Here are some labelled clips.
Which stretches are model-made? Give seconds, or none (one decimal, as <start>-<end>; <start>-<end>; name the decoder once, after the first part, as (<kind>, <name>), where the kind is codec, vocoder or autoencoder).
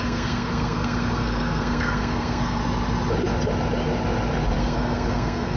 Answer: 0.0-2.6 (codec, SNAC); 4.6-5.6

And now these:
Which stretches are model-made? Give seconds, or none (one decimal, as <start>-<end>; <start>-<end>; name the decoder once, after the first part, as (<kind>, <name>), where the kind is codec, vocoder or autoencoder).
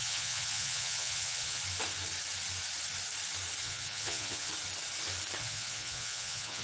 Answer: 0.0-1.6 (vocoder, Vocos); 3.6-4.5; 5.4-6.6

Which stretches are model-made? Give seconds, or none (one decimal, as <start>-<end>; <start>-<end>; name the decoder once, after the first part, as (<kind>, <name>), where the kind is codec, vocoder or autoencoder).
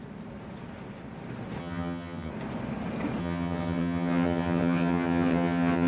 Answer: 1.6-2.3 (vocoder, HiFi-GAN); 3.2-5.9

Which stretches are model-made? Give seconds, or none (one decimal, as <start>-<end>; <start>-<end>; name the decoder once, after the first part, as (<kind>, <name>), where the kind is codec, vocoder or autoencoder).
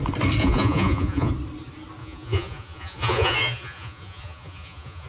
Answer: 0.4-1.3 (vocoder, Vocos); 2.0-5.1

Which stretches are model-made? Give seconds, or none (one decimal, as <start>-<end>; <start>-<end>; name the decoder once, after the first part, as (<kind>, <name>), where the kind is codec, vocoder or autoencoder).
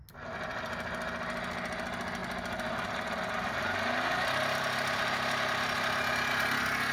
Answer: none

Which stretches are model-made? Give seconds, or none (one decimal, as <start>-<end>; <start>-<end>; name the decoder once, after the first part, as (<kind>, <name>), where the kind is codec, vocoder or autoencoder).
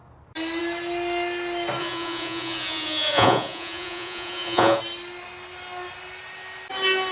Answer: 1.8-4.8 (vocoder, Vocos)